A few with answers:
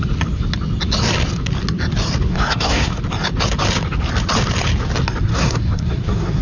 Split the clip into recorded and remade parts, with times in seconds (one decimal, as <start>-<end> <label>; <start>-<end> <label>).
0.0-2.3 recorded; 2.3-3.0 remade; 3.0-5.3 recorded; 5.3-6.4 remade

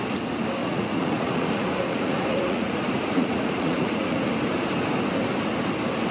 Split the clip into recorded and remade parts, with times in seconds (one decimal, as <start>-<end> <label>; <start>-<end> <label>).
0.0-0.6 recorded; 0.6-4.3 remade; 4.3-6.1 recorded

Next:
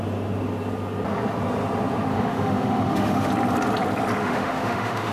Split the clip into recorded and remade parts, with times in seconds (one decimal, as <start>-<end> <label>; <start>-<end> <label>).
0.0-2.1 recorded; 2.1-3.3 remade; 3.3-4.2 recorded; 4.2-5.1 remade